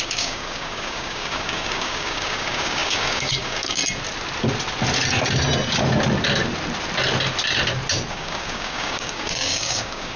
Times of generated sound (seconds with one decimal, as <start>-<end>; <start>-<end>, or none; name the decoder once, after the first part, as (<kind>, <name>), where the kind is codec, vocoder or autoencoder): 0.0-3.8 (codec, DAC); 8.1-10.2